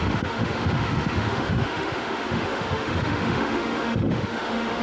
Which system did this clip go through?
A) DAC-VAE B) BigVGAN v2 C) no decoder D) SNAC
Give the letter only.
A